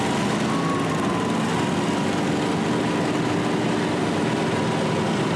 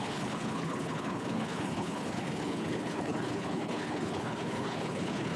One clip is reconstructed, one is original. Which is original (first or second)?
first